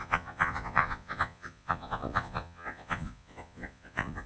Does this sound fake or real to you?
fake